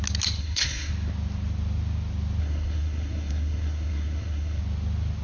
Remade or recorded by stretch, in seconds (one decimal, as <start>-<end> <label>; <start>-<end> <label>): 0.0-0.4 recorded; 0.4-0.9 remade; 0.9-2.4 recorded; 2.4-4.6 remade; 4.6-5.2 recorded